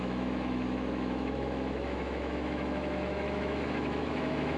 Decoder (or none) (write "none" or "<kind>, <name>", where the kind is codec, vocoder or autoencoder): autoencoder, DAC-VAE